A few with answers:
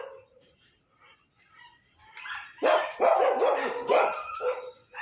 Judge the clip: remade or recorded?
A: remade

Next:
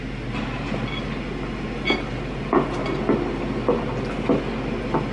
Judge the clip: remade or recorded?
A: recorded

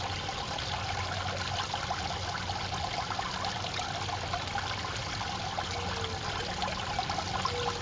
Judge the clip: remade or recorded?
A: recorded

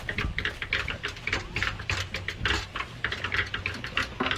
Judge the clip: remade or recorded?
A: recorded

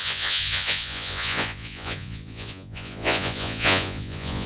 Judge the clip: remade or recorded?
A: remade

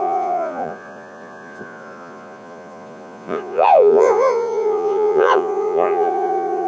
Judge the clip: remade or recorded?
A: remade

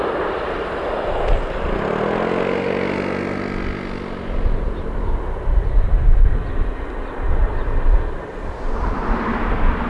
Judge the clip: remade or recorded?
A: recorded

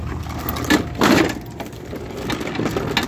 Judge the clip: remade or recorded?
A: recorded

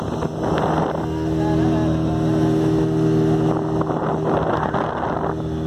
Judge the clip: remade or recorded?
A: recorded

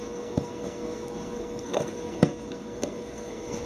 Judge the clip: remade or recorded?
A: remade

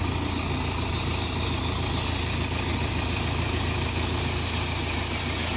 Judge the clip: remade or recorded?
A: recorded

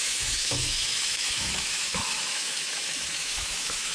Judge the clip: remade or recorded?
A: remade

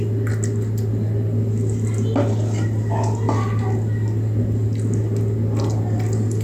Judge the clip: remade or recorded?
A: recorded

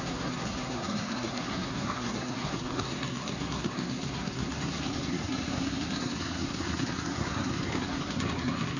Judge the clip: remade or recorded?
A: remade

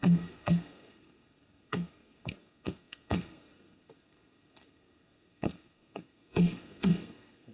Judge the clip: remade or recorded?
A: remade